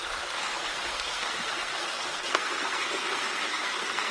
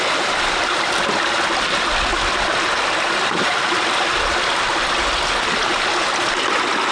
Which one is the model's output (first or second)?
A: first